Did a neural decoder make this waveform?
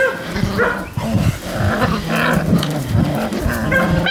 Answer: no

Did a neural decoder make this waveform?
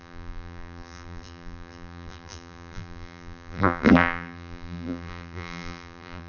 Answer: yes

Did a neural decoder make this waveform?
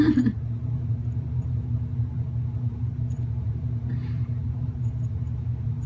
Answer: yes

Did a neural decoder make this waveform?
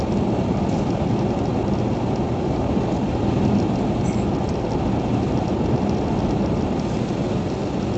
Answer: no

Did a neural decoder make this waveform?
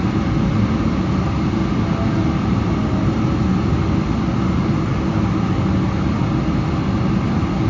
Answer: no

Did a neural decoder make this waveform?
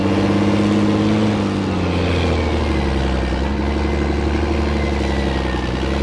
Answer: no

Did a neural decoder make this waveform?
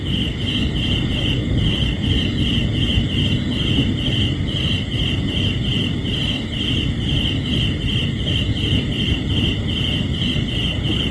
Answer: no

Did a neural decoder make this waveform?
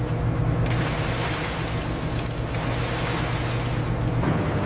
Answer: no